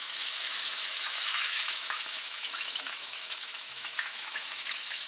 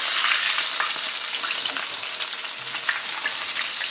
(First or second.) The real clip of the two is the second